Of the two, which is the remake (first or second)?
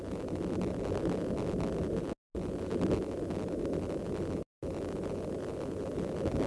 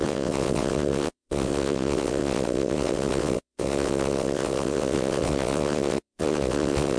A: second